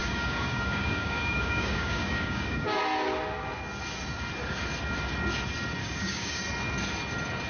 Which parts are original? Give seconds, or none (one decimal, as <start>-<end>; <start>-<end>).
2.8-5.8; 6.4-7.5